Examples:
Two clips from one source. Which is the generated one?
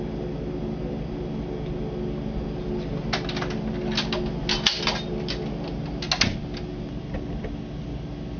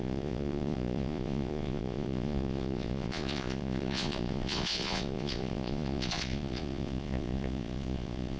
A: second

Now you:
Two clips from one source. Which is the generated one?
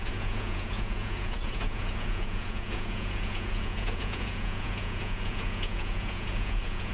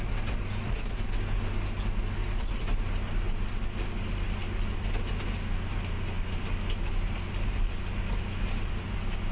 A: first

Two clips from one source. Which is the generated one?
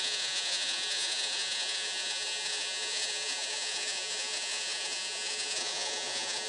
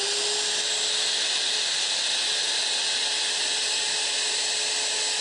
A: first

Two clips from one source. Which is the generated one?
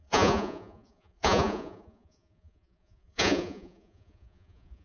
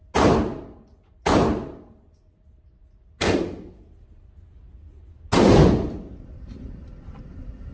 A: first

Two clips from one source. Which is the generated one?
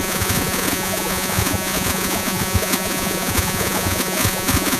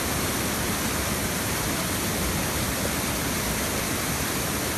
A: first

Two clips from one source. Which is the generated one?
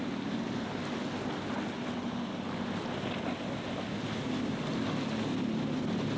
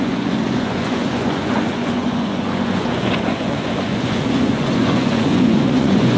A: second